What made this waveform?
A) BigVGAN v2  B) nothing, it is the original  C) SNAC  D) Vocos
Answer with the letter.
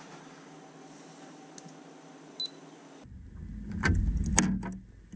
B